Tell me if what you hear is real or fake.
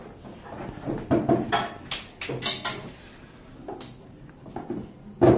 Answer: real